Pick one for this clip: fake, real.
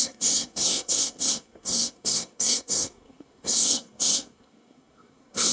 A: fake